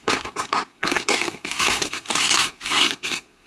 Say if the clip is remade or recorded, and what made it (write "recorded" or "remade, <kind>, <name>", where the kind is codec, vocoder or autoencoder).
remade, codec, SNAC